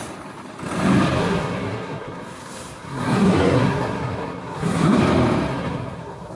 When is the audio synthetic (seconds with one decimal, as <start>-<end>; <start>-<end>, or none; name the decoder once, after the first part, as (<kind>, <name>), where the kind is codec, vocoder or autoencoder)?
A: 1.2-5.0 (codec, SNAC); 5.5-6.3